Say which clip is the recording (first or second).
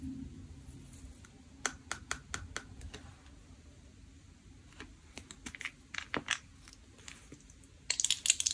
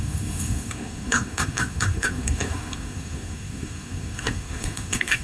first